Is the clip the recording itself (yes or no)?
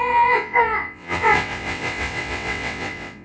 no